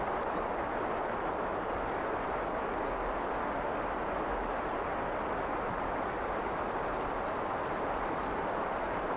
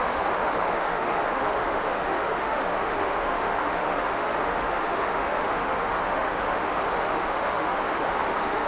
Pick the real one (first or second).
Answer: first